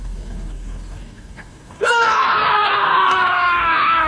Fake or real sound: fake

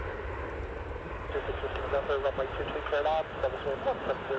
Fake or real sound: real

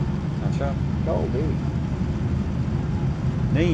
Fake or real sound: real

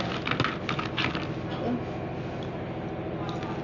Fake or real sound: real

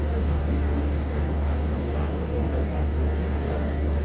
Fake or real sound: fake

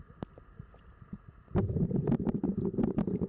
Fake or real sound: real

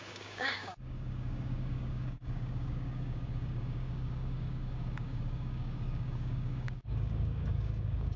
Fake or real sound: fake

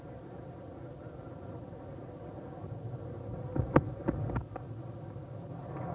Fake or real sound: real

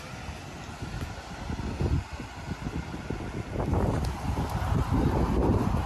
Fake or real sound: real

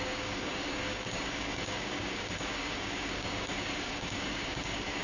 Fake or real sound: fake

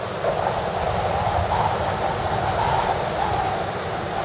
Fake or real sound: real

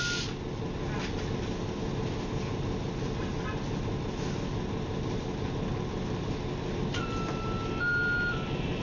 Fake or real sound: real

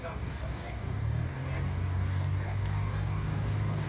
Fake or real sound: fake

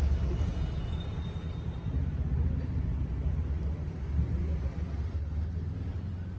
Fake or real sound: real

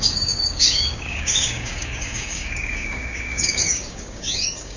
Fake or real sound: fake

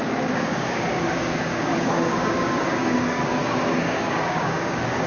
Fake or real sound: fake